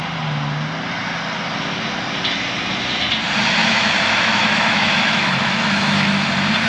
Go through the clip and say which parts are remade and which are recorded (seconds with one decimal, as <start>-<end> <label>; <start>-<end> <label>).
0.0-3.6 recorded; 3.6-6.3 remade; 6.3-6.7 recorded